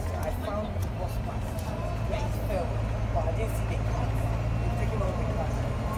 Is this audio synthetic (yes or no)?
no